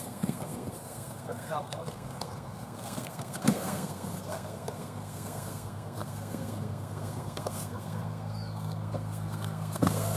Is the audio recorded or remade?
remade